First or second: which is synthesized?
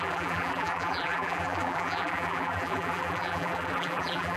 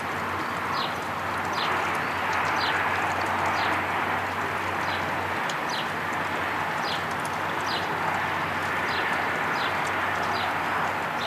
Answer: first